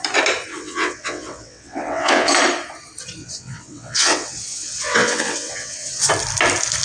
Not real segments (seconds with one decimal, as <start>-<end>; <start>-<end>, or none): 0.5-2.3; 3.2-6.1